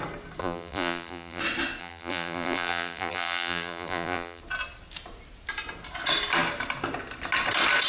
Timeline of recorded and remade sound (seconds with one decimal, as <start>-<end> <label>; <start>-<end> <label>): 0.0-0.4 recorded; 0.4-1.4 remade; 1.4-1.8 recorded; 1.8-4.4 remade; 4.4-7.9 recorded